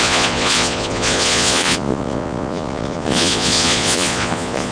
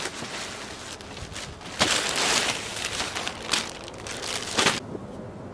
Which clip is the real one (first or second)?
second